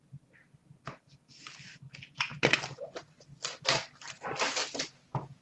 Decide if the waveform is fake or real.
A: real